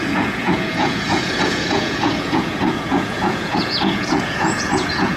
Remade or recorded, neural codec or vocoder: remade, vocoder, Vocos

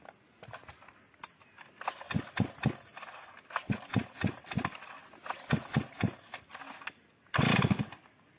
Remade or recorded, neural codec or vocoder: recorded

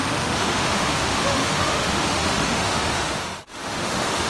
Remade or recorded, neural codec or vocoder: remade, autoencoder, DAC-VAE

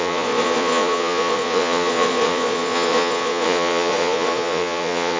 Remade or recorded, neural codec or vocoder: remade, vocoder, Vocos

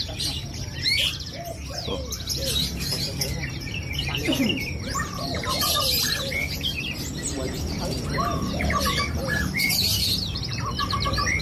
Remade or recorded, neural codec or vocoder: remade, vocoder, BigVGAN v2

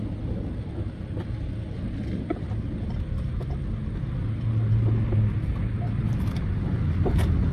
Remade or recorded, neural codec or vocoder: recorded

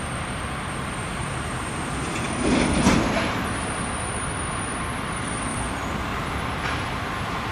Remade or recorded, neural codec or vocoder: recorded